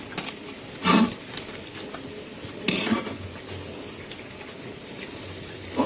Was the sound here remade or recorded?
recorded